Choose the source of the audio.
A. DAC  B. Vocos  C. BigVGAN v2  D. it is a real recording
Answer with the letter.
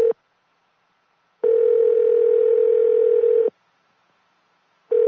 B